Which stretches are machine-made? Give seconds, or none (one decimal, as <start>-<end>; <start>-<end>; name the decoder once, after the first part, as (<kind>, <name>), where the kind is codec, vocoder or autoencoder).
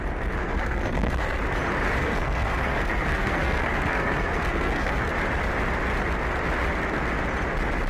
0.4-1.4 (codec, SNAC); 2.0-5.1